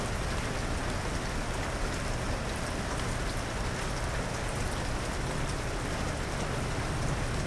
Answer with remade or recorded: recorded